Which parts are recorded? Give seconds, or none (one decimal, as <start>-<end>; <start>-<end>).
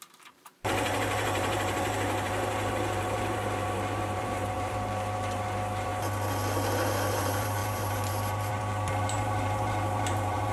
5.9-7.1